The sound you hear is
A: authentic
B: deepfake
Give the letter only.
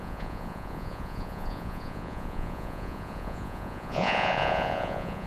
B